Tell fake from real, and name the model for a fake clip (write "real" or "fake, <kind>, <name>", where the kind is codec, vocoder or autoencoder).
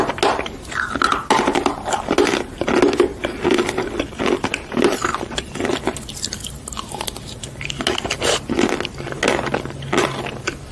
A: real